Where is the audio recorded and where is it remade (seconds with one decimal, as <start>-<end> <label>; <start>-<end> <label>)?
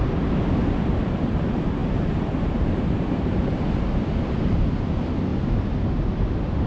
0.0-1.8 recorded; 1.8-3.7 remade; 3.7-6.7 recorded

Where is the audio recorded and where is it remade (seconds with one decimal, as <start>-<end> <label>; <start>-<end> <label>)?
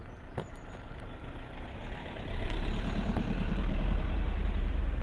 0.0-2.0 recorded; 2.0-5.0 remade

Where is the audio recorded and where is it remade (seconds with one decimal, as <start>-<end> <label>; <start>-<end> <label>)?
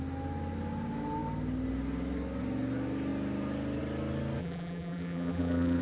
0.0-4.4 recorded; 4.4-5.8 remade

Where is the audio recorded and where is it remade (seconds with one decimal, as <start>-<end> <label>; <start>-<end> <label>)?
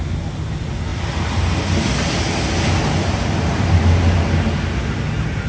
0.0-5.5 recorded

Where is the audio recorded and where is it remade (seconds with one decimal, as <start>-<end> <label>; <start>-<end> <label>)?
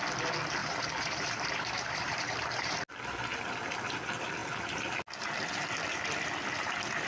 0.0-0.6 recorded; 0.6-2.7 remade; 2.7-7.1 recorded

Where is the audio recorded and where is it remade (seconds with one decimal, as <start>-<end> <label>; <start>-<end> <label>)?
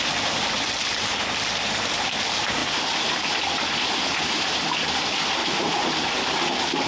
0.0-5.4 recorded; 5.4-5.9 remade; 5.9-6.9 recorded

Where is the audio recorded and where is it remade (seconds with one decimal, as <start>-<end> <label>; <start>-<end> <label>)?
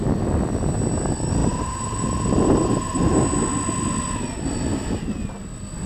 0.0-1.4 recorded; 1.4-3.2 remade; 3.2-5.9 recorded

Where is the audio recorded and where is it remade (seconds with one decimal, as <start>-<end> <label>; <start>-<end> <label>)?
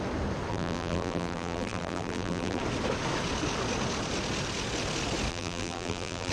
0.0-0.5 recorded; 0.5-2.6 remade; 2.6-5.3 recorded; 5.3-6.3 remade